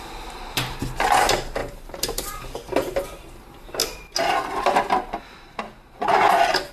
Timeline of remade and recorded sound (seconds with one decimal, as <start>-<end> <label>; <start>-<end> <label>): 0.0-1.6 recorded; 1.6-2.3 remade; 2.3-6.7 recorded